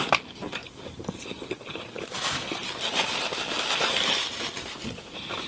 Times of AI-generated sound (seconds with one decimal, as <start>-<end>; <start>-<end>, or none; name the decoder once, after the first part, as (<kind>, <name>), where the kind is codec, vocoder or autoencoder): none